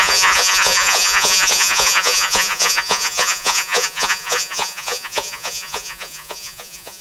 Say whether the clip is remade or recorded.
remade